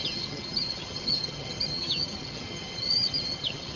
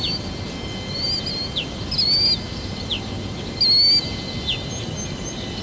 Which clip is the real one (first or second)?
second